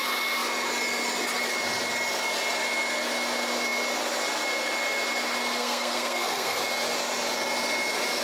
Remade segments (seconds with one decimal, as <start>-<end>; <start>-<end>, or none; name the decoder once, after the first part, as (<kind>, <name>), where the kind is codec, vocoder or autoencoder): 5.6-6.6 (codec, SNAC)